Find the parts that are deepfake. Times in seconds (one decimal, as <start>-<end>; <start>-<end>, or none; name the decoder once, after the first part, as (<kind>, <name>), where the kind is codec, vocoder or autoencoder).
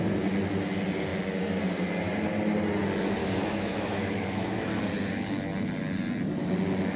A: 3.2-4.8 (autoencoder, DAC-VAE)